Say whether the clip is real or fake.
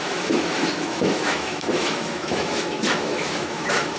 fake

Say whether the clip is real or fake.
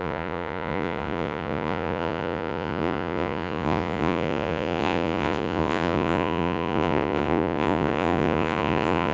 fake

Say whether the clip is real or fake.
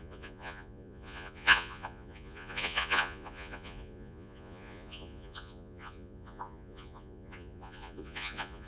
fake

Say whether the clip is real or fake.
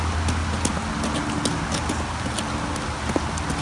real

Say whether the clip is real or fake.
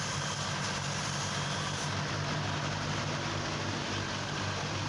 real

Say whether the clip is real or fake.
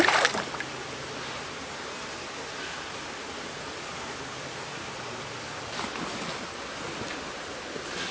real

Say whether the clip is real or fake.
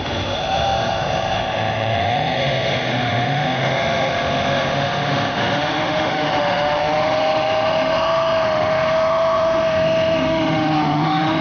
fake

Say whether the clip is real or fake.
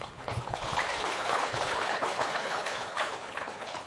fake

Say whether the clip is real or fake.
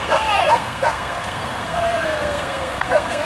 fake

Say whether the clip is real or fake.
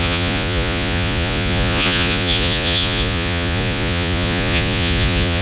fake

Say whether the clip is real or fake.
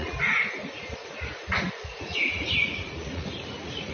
fake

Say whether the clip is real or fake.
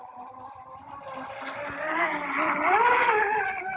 real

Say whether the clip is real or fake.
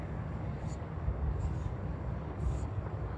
fake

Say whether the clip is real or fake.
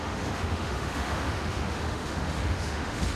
fake